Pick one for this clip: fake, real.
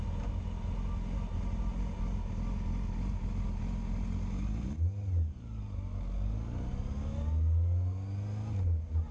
real